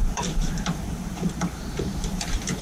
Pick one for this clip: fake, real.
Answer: fake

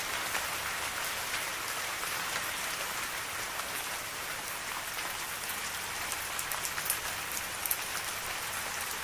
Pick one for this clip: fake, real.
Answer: real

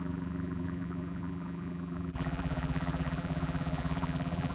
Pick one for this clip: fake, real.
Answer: fake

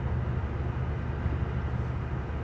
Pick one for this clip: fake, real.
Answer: real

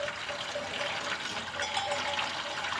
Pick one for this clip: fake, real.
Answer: real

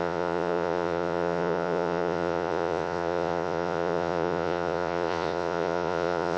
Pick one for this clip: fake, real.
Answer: fake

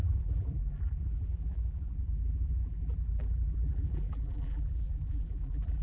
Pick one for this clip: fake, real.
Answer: fake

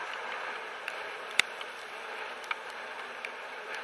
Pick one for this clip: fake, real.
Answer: fake